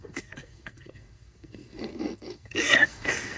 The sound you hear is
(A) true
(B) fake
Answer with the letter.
B